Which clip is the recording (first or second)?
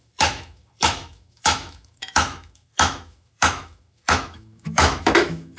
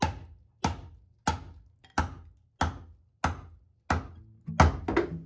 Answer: second